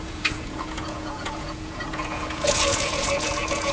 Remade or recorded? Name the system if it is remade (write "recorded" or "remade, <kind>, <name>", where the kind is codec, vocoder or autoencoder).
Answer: remade, vocoder, Vocos